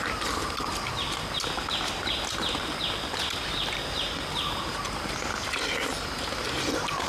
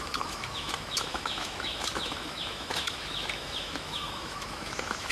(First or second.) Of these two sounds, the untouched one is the first